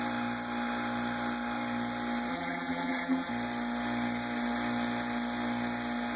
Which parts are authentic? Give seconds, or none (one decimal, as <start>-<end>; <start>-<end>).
0.0-2.3; 3.3-6.2